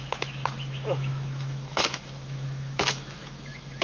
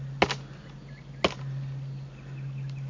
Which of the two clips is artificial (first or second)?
first